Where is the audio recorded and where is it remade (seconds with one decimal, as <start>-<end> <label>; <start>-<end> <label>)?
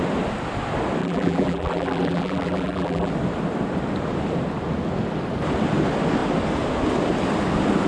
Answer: 0.0-1.0 recorded; 1.0-3.1 remade; 3.1-7.9 recorded